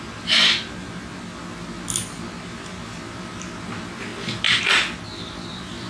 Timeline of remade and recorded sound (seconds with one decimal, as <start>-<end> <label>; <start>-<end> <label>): 0.0-4.1 recorded; 4.1-4.6 remade; 4.6-5.9 recorded